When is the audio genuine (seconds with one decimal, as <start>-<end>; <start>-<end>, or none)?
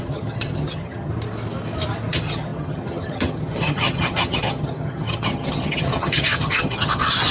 1.1-2.1